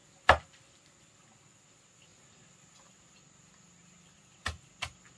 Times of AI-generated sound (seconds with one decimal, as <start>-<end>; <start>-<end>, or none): none

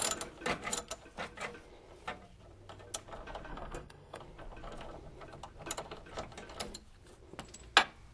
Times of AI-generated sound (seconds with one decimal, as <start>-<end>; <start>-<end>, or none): 3.5-4.2

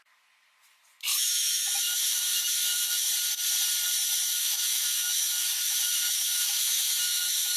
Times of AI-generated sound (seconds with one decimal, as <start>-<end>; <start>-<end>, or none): 1.1-3.1; 4.3-7.6

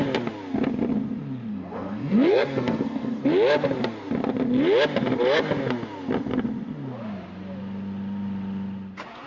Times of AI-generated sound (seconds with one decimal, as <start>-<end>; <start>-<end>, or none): 1.5-3.2

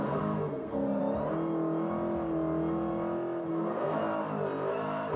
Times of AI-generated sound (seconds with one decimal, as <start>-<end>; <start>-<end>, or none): 0.0-1.0; 3.5-4.0; 4.7-5.2

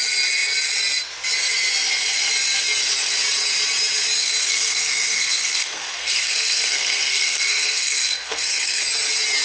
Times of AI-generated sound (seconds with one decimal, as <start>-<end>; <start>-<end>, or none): 4.2-8.8

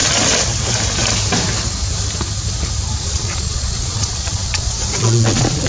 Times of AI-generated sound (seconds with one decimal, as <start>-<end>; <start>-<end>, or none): 3.0-5.7